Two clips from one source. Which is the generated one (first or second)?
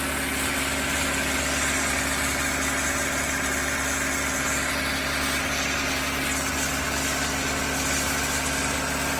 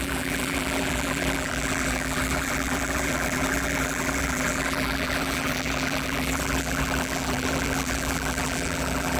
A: second